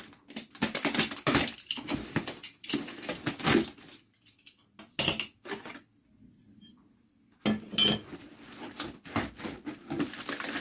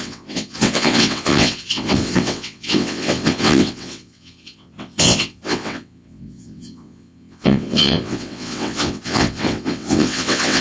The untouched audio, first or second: first